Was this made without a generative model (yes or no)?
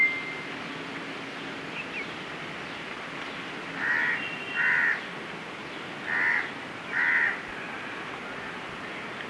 yes